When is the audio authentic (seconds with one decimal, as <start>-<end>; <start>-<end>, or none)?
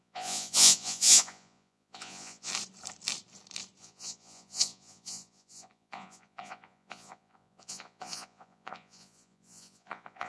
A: 2.5-3.8